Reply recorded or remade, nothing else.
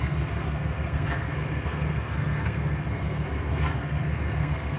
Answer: remade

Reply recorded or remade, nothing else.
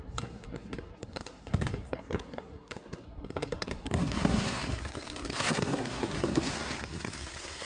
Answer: remade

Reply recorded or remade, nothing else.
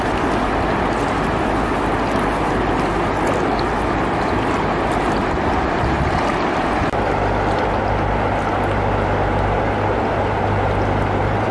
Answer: recorded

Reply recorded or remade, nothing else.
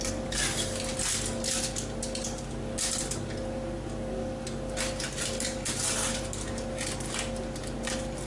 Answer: recorded